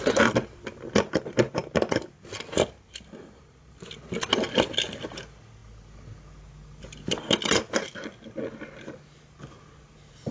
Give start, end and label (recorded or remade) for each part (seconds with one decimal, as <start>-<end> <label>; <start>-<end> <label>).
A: 0.0-10.3 recorded